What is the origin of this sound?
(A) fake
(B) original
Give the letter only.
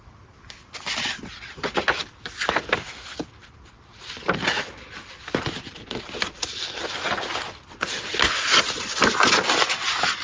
B